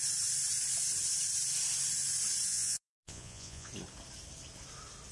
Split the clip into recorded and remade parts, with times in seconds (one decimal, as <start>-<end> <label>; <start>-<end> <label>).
0.0-2.5 recorded; 2.5-3.7 remade; 3.7-5.1 recorded